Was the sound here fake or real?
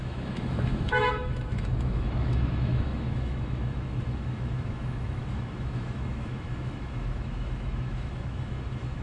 fake